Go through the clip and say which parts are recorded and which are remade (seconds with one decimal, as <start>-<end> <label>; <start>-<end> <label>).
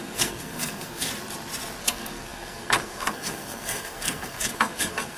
0.0-1.1 remade; 1.1-1.8 recorded; 1.8-5.2 remade